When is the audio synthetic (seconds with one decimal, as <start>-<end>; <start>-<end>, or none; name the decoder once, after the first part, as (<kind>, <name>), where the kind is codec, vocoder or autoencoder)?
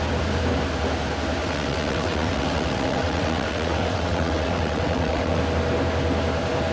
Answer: 1.4-5.4 (vocoder, WaveNeXt)